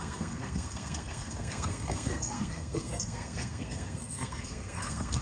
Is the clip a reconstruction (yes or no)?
yes